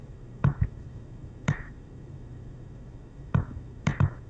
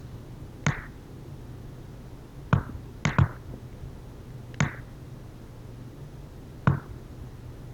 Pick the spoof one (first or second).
first